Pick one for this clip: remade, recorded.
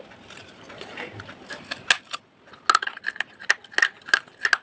recorded